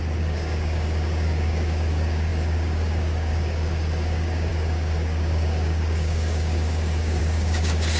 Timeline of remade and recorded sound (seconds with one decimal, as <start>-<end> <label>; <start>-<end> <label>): 0.0-8.0 remade